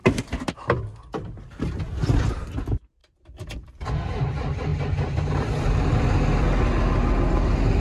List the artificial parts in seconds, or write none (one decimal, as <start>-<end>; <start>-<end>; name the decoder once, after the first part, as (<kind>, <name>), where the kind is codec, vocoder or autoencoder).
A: 0.0-0.5 (vocoder, BigVGAN v2); 3.0-3.8; 4.7-5.3